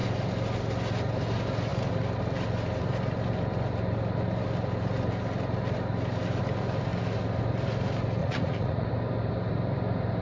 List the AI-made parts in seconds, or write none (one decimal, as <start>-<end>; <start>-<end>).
8.2-8.9